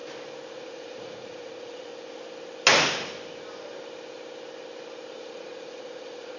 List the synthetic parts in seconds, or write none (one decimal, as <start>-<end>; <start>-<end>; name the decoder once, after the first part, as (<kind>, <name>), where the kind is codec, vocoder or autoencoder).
0.5-1.9 (vocoder, Vocos); 5.3-6.4